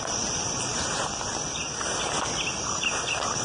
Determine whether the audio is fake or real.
real